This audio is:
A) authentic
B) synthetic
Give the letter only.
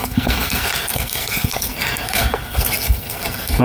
B